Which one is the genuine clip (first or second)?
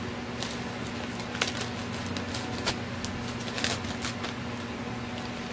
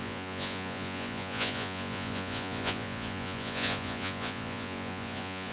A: first